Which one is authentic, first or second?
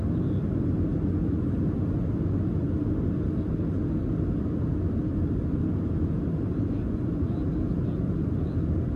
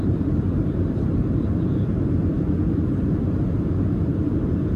first